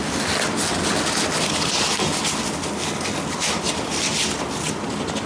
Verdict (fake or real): real